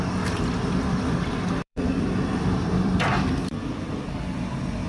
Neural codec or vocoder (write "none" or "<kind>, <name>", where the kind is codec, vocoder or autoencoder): vocoder, BigVGAN v2